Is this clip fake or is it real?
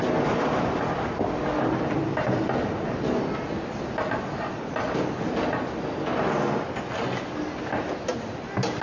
real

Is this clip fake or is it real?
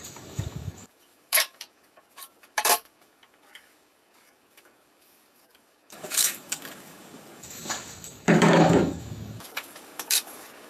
fake